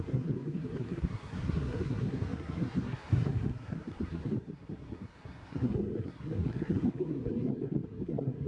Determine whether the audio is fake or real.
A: fake